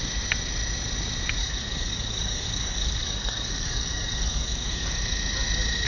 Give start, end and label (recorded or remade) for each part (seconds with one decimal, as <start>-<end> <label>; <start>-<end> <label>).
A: 0.0-1.4 recorded; 1.4-4.9 remade; 4.9-5.9 recorded